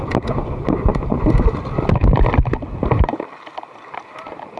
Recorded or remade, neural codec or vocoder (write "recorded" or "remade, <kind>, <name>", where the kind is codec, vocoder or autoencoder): recorded